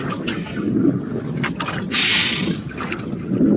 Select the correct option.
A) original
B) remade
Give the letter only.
A